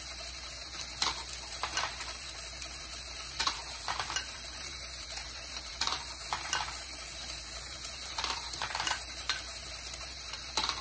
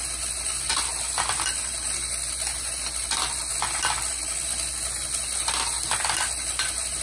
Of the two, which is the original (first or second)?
second